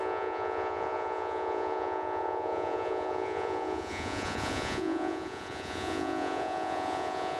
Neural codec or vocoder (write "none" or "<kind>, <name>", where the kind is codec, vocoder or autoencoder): vocoder, Vocos